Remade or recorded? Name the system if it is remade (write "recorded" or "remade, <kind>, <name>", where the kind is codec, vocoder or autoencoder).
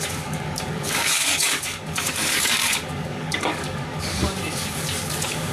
remade, codec, DAC